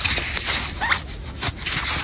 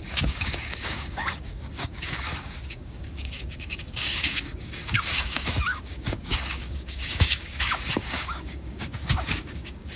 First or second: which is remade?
second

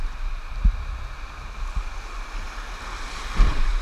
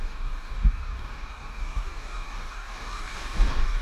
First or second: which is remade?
second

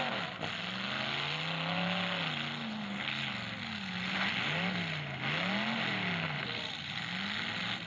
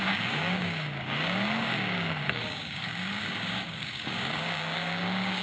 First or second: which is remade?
second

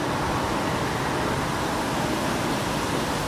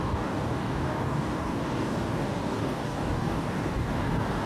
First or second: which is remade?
second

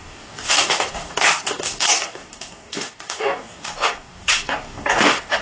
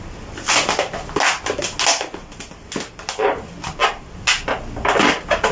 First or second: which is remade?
first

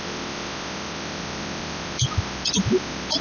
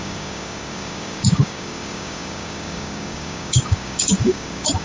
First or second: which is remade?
second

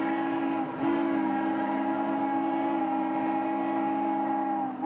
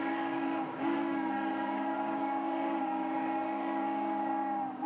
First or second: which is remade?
second